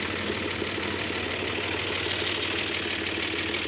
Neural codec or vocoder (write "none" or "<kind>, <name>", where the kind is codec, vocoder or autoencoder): none